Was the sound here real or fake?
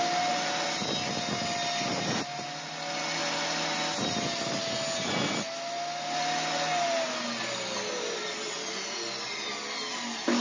real